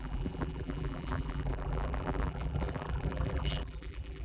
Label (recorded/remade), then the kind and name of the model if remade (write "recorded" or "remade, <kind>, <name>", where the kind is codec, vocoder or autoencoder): remade, vocoder, BigVGAN v2